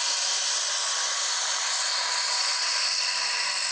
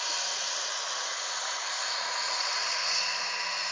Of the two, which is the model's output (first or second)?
second